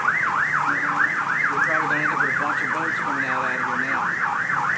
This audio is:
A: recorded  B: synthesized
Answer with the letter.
A